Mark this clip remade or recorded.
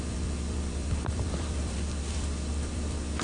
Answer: remade